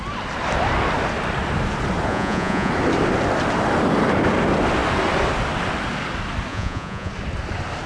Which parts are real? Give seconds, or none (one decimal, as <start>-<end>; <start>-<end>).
0.0-2.1; 2.7-6.5; 7.1-7.9